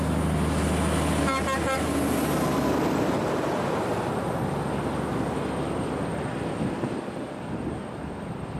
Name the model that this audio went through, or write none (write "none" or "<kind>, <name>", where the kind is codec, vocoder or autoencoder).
none